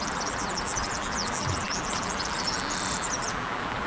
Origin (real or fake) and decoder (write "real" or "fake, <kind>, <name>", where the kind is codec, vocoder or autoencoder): fake, vocoder, BigVGAN v2